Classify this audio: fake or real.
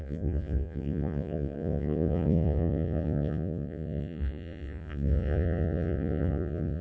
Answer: fake